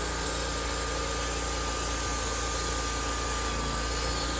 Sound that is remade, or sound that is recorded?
recorded